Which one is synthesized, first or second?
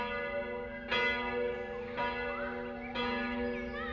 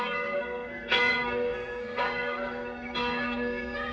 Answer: second